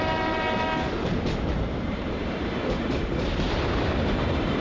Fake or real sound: fake